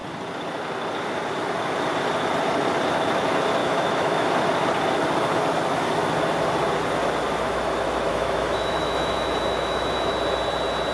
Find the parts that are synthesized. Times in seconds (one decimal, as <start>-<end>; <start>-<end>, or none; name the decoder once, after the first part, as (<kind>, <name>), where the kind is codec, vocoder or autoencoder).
3.6-4.3 (autoencoder, DAC-VAE); 8.1-10.1